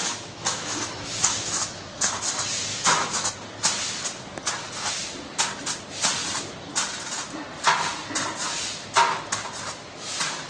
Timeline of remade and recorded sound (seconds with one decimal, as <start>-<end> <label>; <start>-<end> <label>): 0.0-2.1 remade; 2.1-2.7 recorded; 2.7-3.3 remade; 3.3-10.5 recorded